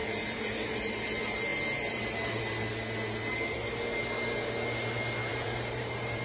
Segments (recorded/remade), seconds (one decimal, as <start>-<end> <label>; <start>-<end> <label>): 0.0-0.9 remade; 0.9-5.3 recorded; 5.3-6.2 remade